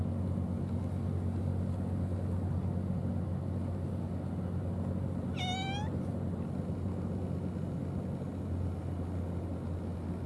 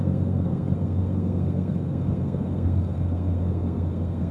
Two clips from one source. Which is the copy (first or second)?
second